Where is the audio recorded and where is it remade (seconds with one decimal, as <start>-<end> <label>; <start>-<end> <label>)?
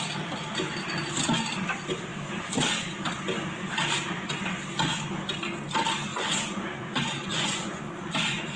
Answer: 0.0-6.1 recorded; 6.1-8.6 remade